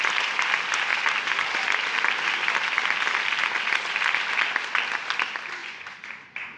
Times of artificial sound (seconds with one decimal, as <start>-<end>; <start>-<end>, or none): 5.6-6.1